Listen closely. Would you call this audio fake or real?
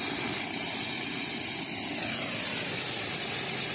real